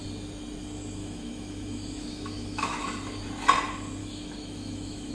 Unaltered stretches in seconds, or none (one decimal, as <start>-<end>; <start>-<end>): 0.0-1.0; 2.8-4.0